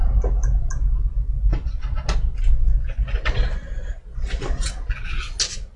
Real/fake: real